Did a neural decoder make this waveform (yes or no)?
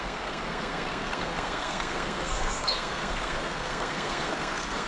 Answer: yes